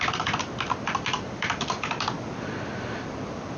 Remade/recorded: remade